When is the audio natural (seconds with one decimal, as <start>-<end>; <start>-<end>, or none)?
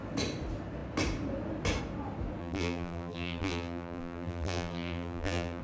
0.0-2.4